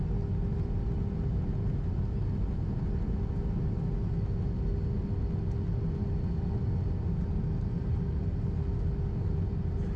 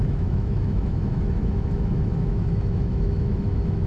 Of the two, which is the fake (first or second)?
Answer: second